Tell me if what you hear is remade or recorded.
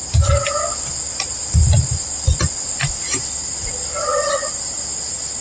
recorded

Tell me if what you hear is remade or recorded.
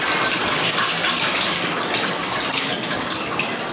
recorded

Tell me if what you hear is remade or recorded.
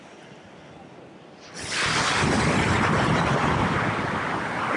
recorded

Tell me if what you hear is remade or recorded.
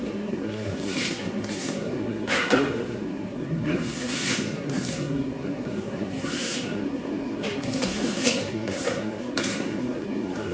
remade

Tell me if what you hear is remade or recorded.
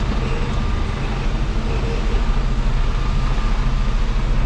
recorded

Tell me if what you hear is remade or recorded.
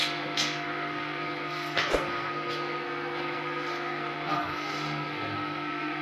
remade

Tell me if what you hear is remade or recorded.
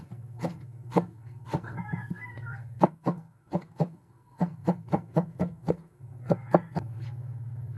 remade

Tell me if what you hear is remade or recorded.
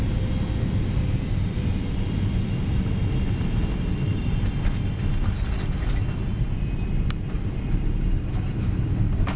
recorded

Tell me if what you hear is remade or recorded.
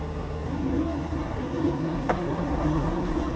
remade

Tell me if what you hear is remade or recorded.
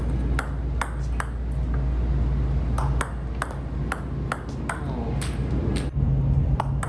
recorded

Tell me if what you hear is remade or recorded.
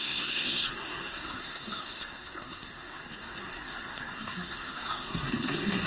remade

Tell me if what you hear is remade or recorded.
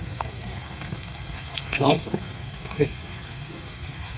remade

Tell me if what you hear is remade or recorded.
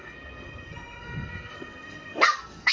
remade